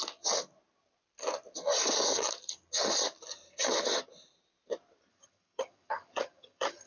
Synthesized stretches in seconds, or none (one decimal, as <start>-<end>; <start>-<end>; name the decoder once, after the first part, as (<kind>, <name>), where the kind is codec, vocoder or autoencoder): 5.1-6.9 (vocoder, HiFi-GAN)